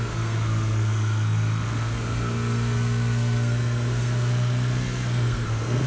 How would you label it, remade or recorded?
remade